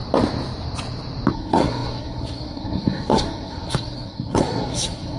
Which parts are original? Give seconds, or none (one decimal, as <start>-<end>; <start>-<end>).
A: 0.0-1.3

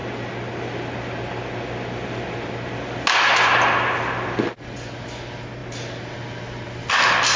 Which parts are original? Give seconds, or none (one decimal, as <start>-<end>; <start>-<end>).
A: 0.0-7.4

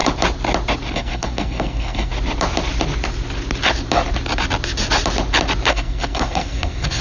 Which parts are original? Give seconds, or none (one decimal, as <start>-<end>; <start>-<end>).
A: 0.0-0.9; 2.1-5.7

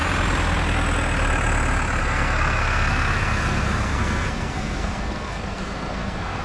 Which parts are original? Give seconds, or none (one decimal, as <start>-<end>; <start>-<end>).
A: 0.0-2.0

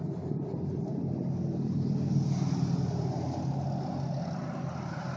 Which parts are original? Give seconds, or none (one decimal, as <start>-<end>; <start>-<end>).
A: 0.0-5.2

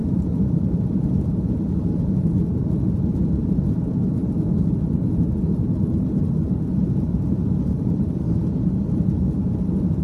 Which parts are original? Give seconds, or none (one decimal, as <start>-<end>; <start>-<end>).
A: 0.0-10.0